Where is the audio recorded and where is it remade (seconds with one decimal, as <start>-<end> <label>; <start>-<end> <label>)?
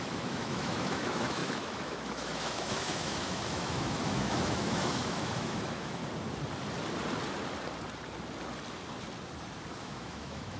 0.0-6.0 remade; 6.0-9.8 recorded; 9.8-10.6 remade